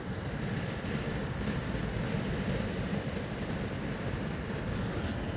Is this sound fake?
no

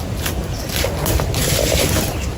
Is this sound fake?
no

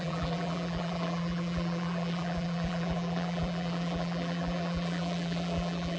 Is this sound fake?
yes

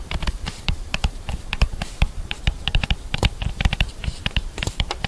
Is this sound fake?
yes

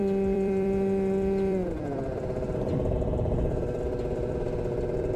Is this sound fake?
yes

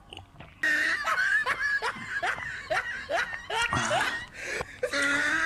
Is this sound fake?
no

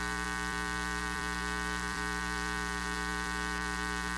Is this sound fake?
yes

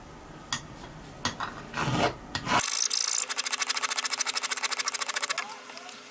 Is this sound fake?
no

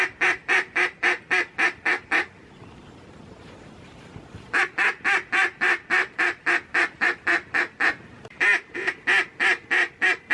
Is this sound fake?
yes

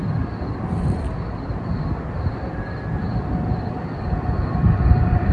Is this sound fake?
yes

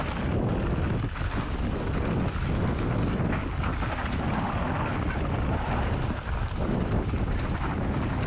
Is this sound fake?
no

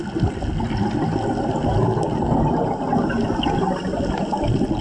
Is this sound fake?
no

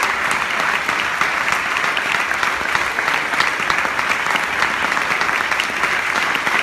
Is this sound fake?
no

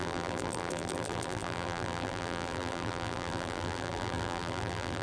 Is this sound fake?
yes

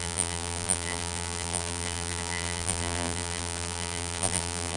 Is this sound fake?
yes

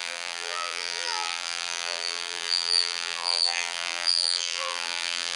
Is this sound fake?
yes